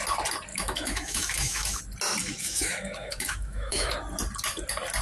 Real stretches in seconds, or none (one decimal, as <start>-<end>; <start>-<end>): 0.0-0.5; 1.8-2.2; 3.9-5.0